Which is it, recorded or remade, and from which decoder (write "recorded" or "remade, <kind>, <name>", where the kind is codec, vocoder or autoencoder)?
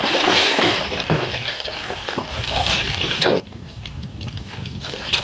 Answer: remade, codec, DAC